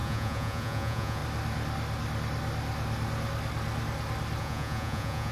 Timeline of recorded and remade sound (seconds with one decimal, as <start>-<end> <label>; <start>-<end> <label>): 0.0-1.2 remade; 1.2-4.4 recorded; 4.4-5.3 remade